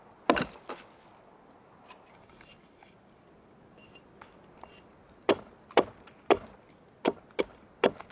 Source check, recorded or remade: recorded